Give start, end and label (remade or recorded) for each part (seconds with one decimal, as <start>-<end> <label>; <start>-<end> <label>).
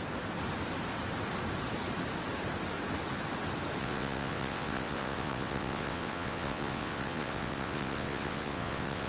0.0-3.8 recorded; 3.8-9.1 remade